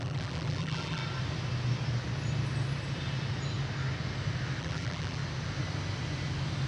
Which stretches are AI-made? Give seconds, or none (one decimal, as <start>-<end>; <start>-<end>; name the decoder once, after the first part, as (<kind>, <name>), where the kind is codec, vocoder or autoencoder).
0.0-1.0 (vocoder, BigVGAN v2); 4.6-5.2